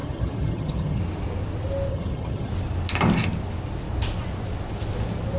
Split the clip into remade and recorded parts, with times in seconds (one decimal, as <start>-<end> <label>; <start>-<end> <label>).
0.0-1.0 remade; 1.0-1.9 recorded; 1.9-2.5 remade; 2.5-5.4 recorded